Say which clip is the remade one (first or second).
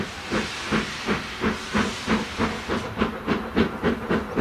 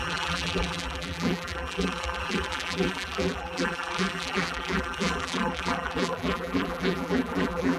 second